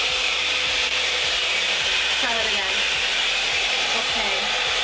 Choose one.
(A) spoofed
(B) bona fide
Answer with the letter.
A